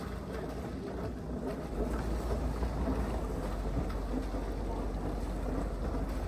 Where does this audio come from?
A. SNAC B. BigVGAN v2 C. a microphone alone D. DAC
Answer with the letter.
C